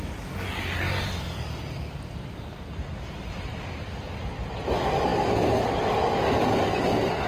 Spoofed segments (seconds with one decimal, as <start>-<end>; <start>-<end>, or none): none